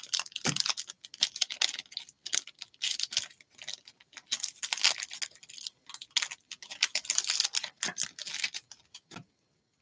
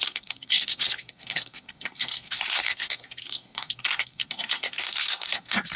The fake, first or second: second